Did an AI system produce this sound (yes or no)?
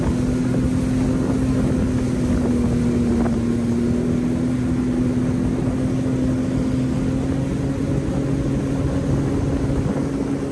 no